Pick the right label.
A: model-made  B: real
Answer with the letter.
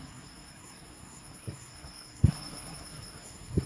A